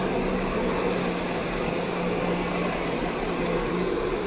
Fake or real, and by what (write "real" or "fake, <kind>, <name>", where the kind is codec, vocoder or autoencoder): real